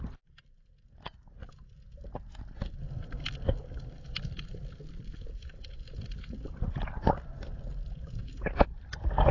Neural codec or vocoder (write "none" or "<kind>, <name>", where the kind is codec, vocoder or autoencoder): none